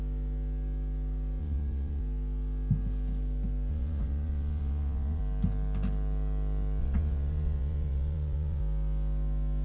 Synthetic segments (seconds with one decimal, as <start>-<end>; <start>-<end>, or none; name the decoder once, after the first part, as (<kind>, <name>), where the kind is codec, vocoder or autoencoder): 1.4-2.0 (vocoder, Vocos); 3.7-5.2; 6.8-8.6